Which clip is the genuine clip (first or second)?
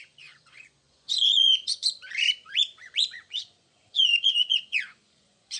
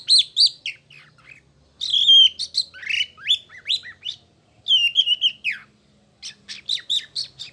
second